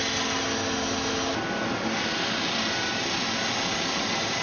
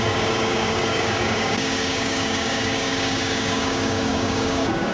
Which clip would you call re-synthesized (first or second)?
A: second